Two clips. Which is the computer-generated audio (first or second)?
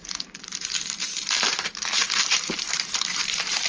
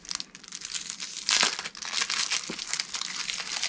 first